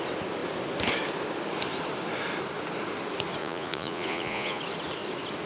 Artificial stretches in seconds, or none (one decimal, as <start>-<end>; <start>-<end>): 3.4-4.6